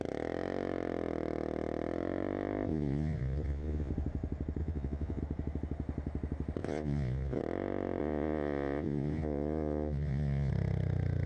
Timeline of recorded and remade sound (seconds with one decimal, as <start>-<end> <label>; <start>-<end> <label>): 0.0-2.7 recorded; 2.7-3.9 remade; 3.9-4.6 recorded; 4.6-5.2 remade; 5.2-6.6 recorded; 6.6-7.4 remade; 7.4-8.0 recorded; 8.0-10.5 remade; 10.5-11.3 recorded